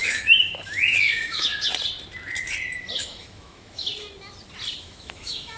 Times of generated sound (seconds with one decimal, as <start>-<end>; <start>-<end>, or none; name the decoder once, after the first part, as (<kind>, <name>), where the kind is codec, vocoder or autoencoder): 0.0-1.5 (autoencoder, DAC-VAE); 2.9-3.9; 4.8-5.6